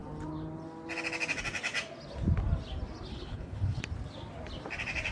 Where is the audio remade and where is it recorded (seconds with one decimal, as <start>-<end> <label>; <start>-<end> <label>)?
0.0-3.1 recorded; 3.1-3.8 remade; 3.8-5.1 recorded

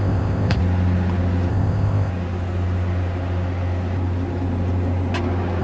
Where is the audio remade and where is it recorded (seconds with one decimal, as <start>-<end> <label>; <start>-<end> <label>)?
0.0-0.6 remade; 0.6-1.5 recorded; 1.5-2.1 remade; 2.1-5.6 recorded

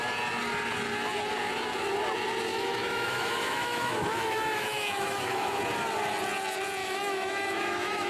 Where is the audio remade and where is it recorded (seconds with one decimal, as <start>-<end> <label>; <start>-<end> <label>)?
0.0-2.5 recorded; 2.5-5.6 remade; 5.6-6.8 recorded; 6.8-8.1 remade